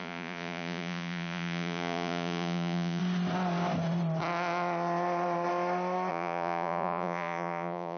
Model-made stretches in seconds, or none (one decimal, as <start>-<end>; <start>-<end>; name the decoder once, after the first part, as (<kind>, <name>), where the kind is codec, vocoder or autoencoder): 0.0-3.0 (vocoder, Vocos); 6.1-8.0